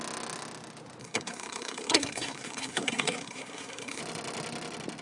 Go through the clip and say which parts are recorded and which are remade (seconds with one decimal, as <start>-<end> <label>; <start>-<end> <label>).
0.0-1.0 recorded; 1.0-4.0 remade; 4.0-5.0 recorded